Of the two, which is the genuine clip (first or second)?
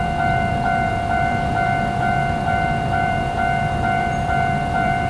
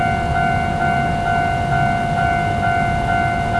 second